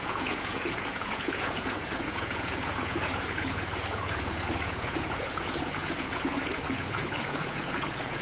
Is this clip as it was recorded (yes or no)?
no